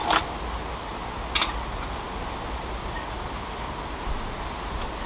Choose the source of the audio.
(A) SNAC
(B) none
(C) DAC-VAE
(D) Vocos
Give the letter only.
B